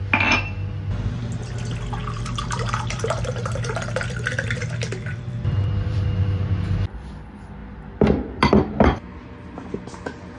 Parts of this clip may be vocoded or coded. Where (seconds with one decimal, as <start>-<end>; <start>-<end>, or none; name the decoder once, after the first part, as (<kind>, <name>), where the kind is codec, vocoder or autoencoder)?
2.0-6.5 (vocoder, BigVGAN v2)